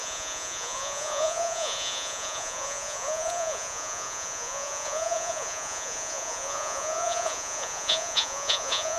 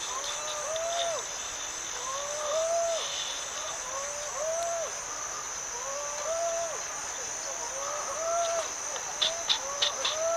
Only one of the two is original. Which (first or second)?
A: second